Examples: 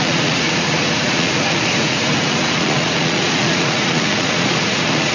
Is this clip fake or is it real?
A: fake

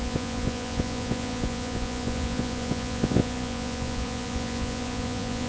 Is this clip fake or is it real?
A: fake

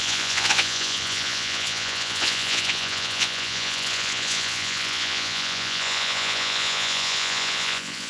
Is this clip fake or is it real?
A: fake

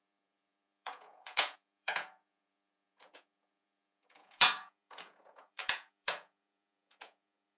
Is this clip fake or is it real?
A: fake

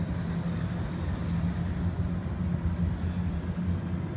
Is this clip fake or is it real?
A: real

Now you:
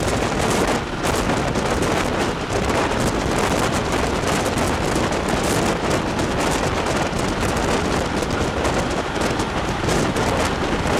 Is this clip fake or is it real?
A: real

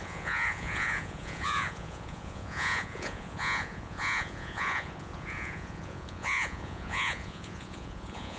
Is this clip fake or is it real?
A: fake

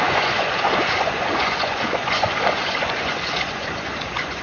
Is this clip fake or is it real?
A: fake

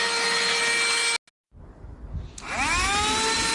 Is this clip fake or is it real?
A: real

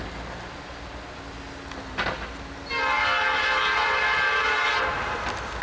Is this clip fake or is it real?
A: real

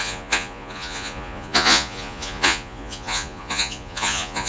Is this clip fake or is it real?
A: fake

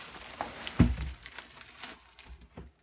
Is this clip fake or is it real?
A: real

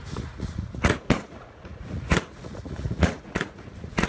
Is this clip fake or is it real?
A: fake